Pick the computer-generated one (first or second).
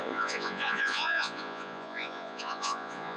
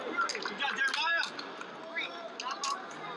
first